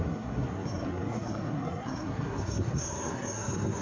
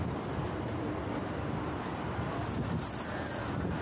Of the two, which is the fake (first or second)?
first